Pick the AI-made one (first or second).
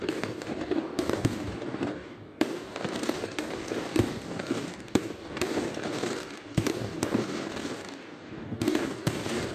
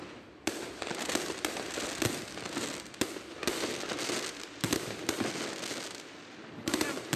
first